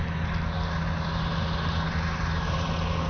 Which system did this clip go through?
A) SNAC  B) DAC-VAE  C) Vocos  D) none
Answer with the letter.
D